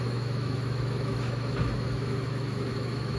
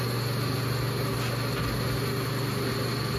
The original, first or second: second